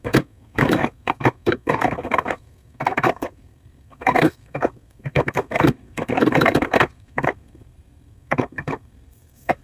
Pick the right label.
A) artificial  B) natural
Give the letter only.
A